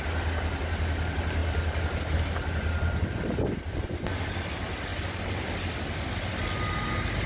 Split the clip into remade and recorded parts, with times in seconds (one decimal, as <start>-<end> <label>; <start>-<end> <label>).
0.0-7.3 recorded